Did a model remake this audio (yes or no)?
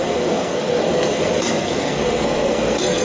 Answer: yes